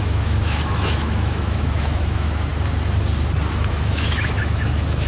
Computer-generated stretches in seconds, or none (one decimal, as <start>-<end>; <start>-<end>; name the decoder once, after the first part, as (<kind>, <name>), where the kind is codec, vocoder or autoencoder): 0.0-2.5 (autoencoder, DAC-VAE); 3.5-5.1

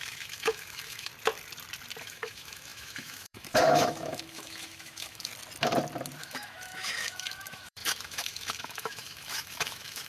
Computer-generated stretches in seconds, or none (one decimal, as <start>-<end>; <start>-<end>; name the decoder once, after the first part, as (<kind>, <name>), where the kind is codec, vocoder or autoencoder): 0.0-1.1 (autoencoder, DAC-VAE); 2.0-5.3; 6.2-10.1